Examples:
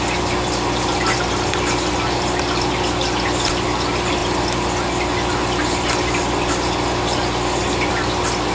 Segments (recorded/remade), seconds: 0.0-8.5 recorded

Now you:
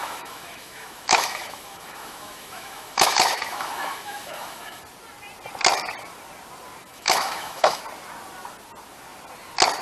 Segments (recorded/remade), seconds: 0.0-4.8 remade; 4.8-6.9 recorded; 6.9-7.8 remade; 7.8-9.8 recorded

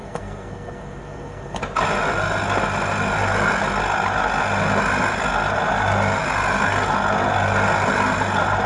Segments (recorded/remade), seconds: 0.0-1.6 remade; 1.6-8.7 recorded

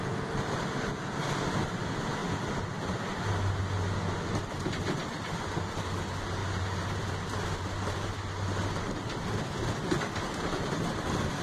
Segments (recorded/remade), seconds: 0.0-6.4 recorded; 6.4-8.2 remade; 8.2-11.4 recorded

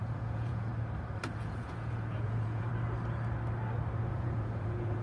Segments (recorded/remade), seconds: 0.0-0.7 remade; 0.7-1.3 recorded; 1.3-2.7 remade; 2.7-4.1 recorded; 4.1-5.0 remade

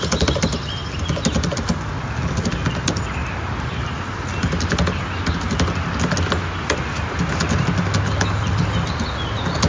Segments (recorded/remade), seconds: 0.0-9.7 recorded

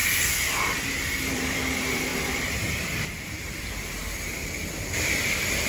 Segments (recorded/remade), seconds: 0.0-5.7 remade

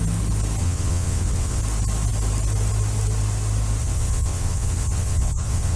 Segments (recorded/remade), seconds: 0.0-0.6 recorded; 0.6-1.6 remade; 1.6-3.8 recorded; 3.8-5.8 remade